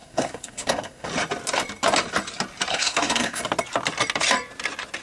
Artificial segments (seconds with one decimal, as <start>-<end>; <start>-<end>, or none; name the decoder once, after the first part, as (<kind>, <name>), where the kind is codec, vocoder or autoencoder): 0.0-1.1 (codec, SNAC); 2.7-3.4